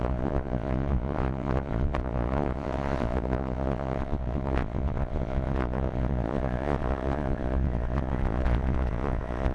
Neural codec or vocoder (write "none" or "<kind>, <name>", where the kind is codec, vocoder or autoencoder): vocoder, Vocos